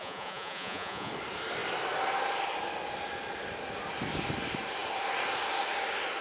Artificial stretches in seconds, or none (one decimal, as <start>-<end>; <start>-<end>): 0.0-1.1